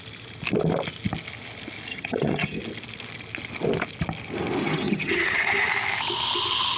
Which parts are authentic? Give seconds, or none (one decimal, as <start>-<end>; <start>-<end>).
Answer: 0.0-1.9; 2.6-4.6; 5.7-6.8